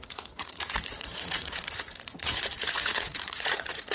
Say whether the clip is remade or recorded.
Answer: remade